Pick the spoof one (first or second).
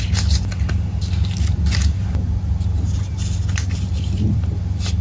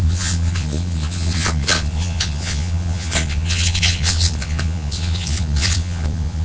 second